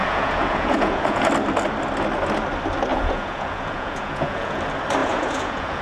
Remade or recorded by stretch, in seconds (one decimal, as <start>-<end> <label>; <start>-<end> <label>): 0.0-1.3 remade; 1.3-2.9 recorded; 2.9-4.6 remade; 4.6-5.0 recorded; 5.0-5.8 remade